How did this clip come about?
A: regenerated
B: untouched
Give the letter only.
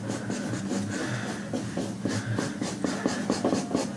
B